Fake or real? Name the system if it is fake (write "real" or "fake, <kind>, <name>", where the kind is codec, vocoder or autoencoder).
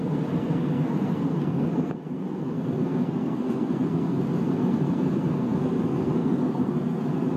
fake, codec, SNAC